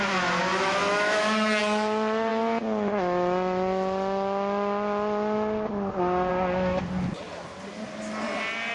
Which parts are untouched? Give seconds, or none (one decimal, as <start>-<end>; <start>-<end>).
0.0-0.4; 1.6-8.7